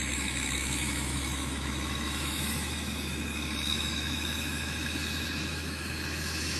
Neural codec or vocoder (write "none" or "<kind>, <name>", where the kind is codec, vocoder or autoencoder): autoencoder, DAC-VAE